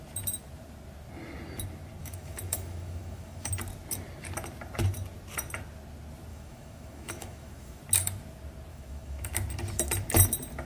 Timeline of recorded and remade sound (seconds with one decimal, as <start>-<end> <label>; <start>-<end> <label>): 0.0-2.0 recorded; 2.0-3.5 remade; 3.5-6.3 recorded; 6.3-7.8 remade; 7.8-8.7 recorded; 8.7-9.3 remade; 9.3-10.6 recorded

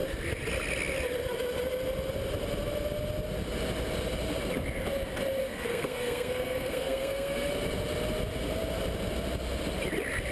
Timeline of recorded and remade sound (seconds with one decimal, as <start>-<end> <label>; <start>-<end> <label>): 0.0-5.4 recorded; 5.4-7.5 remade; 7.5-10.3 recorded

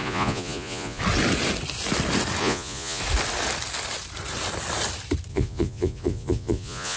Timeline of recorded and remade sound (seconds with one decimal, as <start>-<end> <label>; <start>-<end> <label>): 0.0-1.0 remade; 1.0-2.4 recorded; 2.4-3.0 remade; 3.0-5.3 recorded; 5.3-7.0 remade

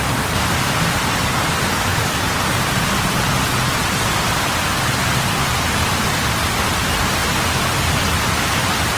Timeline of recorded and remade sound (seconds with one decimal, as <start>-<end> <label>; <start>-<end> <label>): 0.0-5.8 remade; 5.8-6.6 recorded; 6.6-7.2 remade; 7.2-9.0 recorded

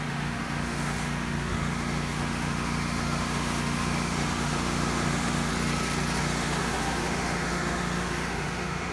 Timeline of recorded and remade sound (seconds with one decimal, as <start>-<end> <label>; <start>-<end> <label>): 0.0-5.5 remade; 5.5-6.2 recorded; 6.2-8.9 remade